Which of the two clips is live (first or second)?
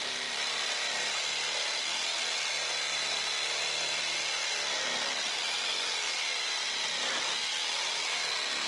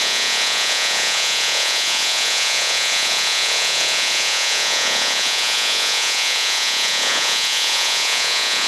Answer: first